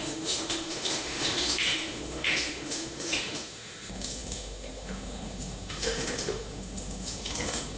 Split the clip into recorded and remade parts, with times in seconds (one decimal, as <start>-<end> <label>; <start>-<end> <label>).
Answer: 0.0-7.8 remade